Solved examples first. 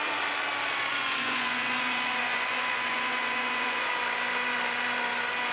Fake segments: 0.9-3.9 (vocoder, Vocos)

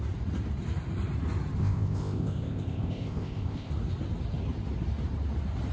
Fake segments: 1.6-3.7 (codec, ZipCodec)

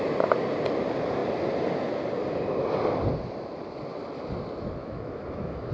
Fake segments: 4.8-5.7 (autoencoder, DAC-VAE)

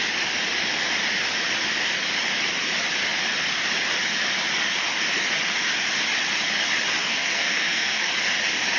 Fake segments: 7.0-8.1 (codec, SNAC)

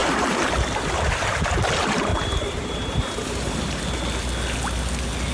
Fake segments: 0.0-1.2 (vocoder, BigVGAN v2); 2.1-3.8

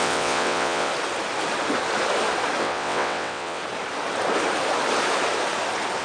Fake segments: 0.0-0.9 (vocoder, WaveNeXt); 2.6-3.6

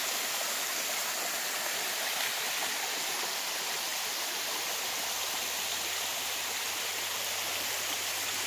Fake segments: none